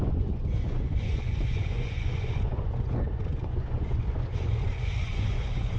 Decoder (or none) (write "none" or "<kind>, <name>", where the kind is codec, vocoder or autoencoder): vocoder, Vocos